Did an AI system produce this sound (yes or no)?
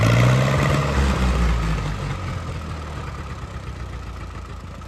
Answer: no